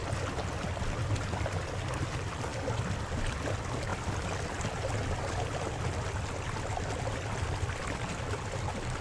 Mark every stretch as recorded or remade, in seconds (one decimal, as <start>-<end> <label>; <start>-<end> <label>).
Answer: 0.0-9.0 recorded